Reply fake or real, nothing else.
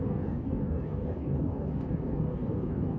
fake